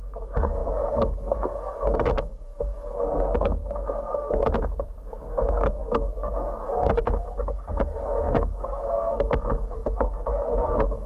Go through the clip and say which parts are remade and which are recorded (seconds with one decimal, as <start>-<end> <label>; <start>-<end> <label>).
0.0-11.1 remade